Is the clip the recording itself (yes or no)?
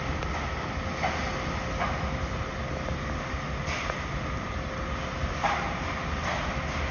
yes